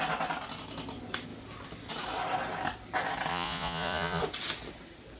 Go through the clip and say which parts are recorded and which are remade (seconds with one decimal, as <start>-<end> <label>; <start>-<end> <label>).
0.0-3.3 recorded; 3.3-4.2 remade; 4.2-5.2 recorded